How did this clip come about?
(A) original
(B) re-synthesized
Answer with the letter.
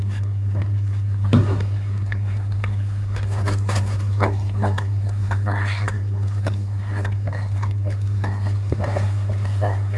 B